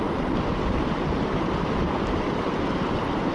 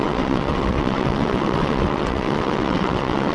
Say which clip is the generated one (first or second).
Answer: second